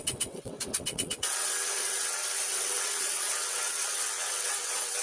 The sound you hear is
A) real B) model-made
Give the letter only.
B